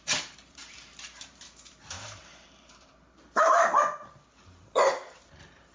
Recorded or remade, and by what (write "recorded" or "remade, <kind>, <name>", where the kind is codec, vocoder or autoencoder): remade, vocoder, BigVGAN v2